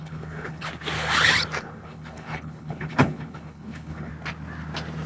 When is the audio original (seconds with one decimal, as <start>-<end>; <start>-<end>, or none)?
0.7-1.6; 4.1-5.1

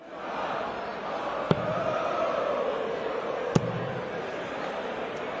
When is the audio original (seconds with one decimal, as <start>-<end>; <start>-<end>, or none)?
0.0-5.4

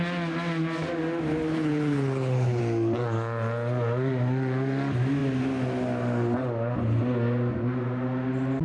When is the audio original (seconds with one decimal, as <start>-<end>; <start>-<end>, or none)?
0.0-1.5; 2.6-8.6

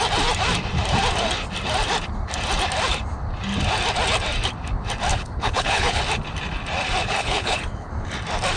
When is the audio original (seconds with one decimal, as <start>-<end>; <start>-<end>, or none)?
0.0-5.1; 6.0-7.0; 7.9-8.6

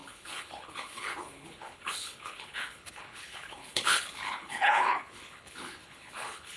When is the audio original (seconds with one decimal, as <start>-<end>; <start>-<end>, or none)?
none

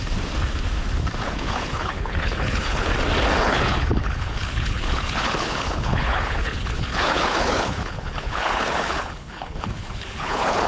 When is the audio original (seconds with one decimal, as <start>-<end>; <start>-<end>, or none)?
0.0-1.3; 2.9-3.4

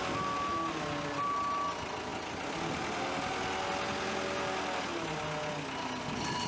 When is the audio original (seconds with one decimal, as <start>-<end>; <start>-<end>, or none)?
0.0-6.5